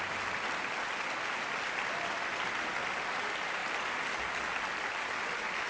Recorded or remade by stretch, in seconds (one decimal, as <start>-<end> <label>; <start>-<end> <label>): 0.0-5.7 recorded